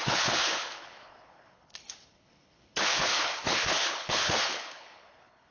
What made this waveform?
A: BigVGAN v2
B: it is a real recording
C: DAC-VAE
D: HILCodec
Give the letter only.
D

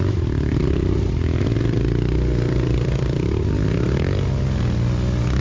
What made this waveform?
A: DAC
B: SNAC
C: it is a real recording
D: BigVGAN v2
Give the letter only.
C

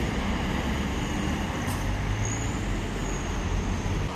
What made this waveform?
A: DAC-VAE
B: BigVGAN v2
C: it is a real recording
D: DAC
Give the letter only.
C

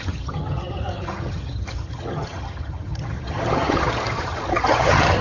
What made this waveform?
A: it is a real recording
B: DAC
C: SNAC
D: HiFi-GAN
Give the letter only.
D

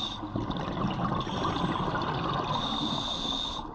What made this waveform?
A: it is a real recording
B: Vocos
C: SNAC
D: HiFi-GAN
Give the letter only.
A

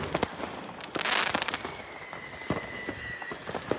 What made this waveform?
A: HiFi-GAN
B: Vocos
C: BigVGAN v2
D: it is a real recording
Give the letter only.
D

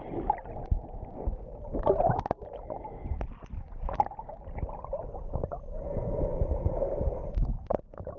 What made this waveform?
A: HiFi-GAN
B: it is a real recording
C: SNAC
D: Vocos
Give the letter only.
B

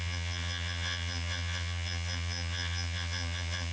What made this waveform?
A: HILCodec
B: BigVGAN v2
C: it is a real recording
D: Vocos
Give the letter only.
D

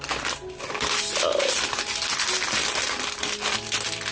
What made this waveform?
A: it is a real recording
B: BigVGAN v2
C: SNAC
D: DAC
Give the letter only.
A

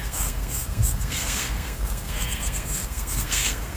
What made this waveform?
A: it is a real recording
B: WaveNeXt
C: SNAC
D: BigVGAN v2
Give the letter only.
C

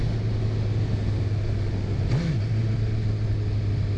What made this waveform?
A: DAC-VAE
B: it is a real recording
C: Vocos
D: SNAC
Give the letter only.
B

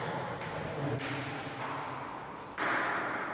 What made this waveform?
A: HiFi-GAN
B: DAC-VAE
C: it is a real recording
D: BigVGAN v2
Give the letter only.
C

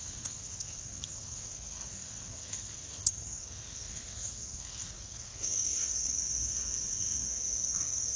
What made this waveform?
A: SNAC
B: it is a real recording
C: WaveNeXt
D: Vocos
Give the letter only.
A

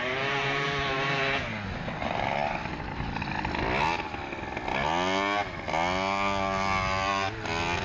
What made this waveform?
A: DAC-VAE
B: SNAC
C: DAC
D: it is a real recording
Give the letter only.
D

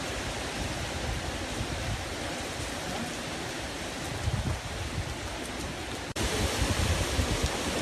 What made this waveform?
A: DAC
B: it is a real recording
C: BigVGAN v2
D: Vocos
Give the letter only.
B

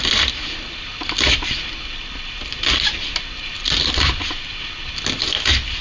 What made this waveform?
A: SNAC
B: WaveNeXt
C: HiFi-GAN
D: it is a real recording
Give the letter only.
D